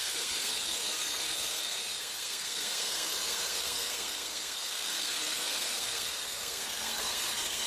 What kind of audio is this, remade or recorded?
remade